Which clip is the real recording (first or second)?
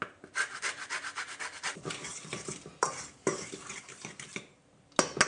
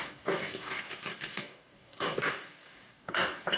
first